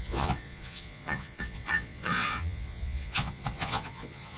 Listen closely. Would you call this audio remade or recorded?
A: remade